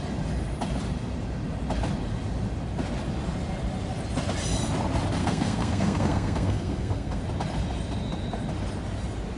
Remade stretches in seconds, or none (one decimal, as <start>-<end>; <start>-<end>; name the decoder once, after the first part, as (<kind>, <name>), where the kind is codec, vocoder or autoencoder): 5.2-7.2 (codec, SNAC)